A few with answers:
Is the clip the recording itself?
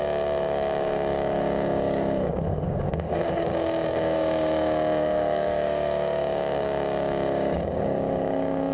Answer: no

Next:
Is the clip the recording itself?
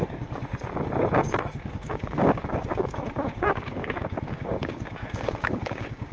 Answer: no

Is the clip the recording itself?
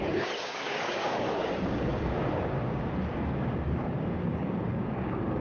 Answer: no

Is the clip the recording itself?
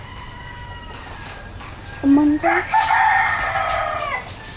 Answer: yes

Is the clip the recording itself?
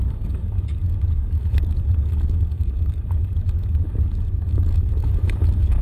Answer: no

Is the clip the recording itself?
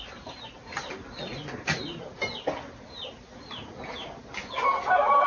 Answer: yes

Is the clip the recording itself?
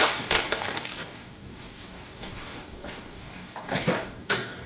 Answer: no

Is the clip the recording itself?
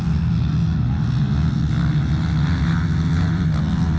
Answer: yes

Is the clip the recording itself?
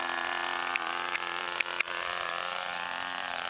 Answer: yes